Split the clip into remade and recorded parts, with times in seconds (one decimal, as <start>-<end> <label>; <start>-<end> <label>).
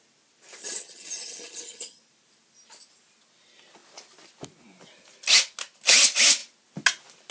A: 0.0-0.6 recorded; 0.6-2.0 remade; 2.0-7.3 recorded